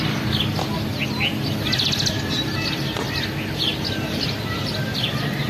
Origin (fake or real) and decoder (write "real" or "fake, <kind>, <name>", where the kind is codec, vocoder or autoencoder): real